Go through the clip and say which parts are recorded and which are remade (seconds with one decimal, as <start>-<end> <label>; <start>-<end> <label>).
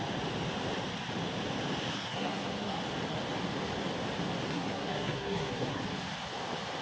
0.0-1.9 recorded; 1.9-2.8 remade; 2.8-4.5 recorded; 4.5-5.8 remade; 5.8-6.8 recorded